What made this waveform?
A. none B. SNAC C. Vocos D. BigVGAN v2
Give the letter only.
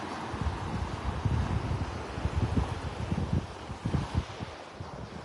A